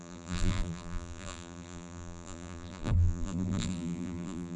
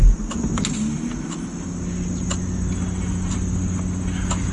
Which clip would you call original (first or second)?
second